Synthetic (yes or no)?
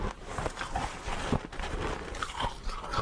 no